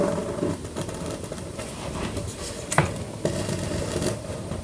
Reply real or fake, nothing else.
fake